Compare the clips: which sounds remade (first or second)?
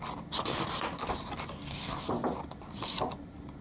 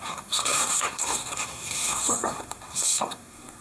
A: second